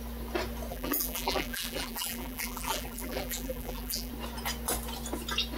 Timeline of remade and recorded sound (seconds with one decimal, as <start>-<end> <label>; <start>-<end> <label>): 0.0-0.7 recorded; 0.7-4.1 remade; 4.1-5.6 recorded